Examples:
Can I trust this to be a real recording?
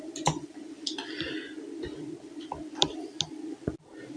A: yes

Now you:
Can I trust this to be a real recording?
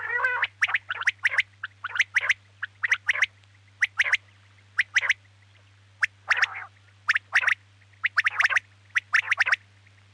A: yes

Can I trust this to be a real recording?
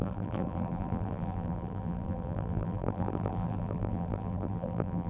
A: no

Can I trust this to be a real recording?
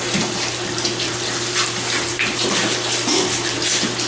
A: yes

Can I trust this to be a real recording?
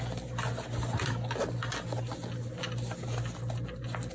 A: yes